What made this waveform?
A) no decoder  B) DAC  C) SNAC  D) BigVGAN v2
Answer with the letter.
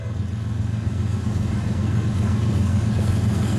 C